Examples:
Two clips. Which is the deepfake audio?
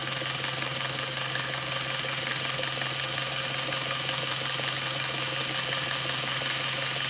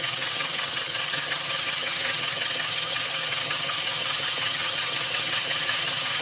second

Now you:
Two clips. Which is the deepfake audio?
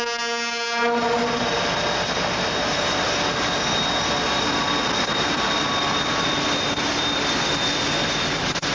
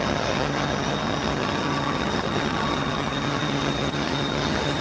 second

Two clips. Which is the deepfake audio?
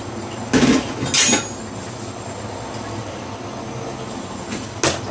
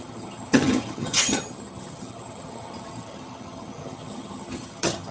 second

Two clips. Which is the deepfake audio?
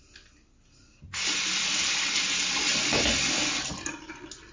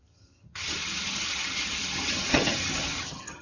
second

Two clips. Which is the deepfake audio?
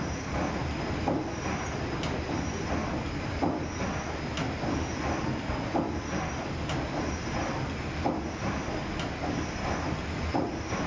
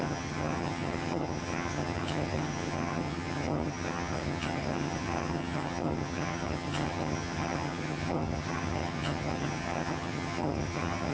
second